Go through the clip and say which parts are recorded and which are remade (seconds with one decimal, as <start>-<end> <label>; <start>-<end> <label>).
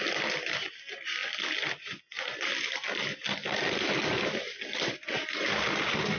0.0-6.2 recorded